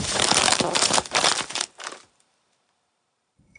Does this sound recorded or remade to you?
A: remade